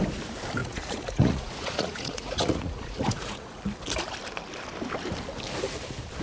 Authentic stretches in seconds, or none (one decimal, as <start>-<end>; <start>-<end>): 0.0-0.6; 3.6-6.2

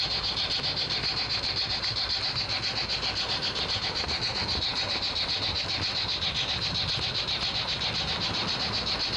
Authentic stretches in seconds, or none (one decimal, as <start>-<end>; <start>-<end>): 0.0-9.2

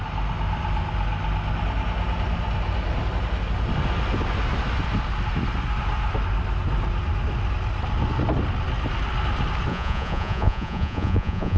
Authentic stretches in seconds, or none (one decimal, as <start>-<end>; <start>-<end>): 0.0-9.7

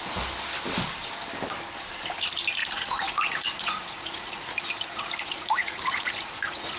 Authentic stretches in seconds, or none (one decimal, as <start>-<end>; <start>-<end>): 0.0-2.6

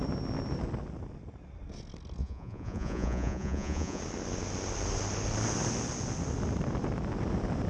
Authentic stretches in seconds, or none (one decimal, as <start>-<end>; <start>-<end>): 0.0-2.2; 4.0-7.7

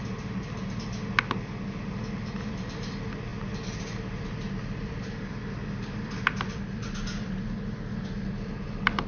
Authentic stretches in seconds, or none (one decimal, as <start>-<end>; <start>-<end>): 0.0-9.1

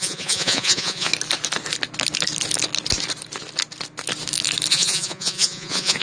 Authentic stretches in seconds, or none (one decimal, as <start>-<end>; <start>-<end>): 1.1-4.7

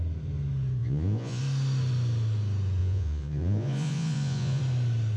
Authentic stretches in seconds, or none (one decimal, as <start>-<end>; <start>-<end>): 0.0-0.8; 1.4-2.8; 4.6-5.2